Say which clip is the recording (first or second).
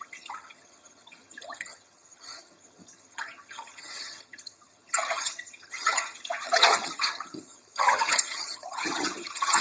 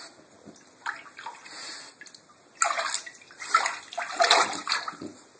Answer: second